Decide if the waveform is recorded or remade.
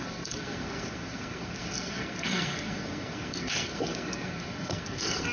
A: remade